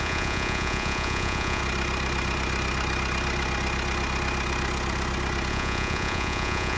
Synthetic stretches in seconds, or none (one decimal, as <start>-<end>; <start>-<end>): 0.0-1.6; 5.5-6.8